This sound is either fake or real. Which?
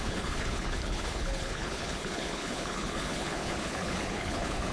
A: fake